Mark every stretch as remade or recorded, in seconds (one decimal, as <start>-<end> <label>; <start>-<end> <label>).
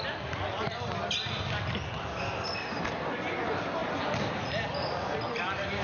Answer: 0.0-5.8 recorded